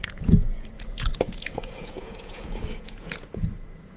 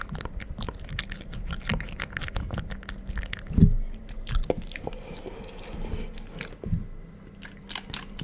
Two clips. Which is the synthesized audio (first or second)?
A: first